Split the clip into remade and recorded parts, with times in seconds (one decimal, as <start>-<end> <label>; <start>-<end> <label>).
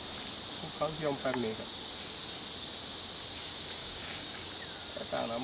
0.0-3.8 recorded; 3.8-4.5 remade; 4.5-5.4 recorded